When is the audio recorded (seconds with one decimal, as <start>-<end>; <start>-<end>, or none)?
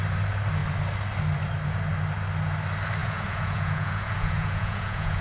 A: 0.0-3.0